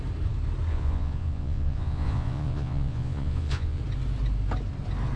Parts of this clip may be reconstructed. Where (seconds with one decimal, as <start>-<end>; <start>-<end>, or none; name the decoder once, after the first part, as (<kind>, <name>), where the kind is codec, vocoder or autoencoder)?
0.7-3.8 (vocoder, Vocos)